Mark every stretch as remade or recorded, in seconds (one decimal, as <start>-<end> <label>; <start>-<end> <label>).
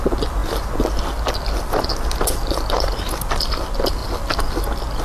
0.0-5.0 recorded